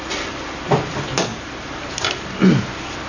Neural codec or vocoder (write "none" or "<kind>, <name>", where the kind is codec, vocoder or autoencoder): none